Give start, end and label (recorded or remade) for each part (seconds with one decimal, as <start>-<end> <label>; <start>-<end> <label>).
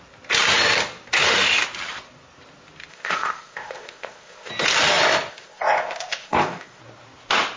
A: 0.0-2.9 recorded; 2.9-4.5 remade; 4.5-5.3 recorded; 5.3-6.8 remade; 6.8-7.6 recorded